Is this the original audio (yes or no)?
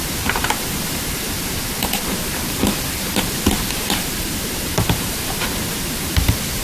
yes